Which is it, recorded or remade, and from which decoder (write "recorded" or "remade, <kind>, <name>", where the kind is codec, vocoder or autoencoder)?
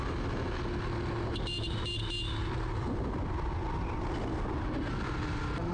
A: recorded